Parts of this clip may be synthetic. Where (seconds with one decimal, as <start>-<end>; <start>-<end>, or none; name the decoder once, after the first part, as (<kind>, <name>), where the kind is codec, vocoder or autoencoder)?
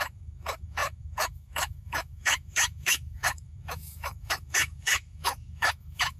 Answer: 0.0-6.2 (autoencoder, DAC-VAE)